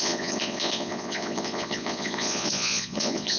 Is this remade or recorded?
remade